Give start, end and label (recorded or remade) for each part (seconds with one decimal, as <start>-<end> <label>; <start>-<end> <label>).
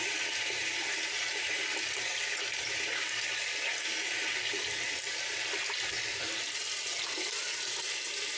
0.0-1.7 remade; 1.7-5.9 recorded; 5.9-8.4 remade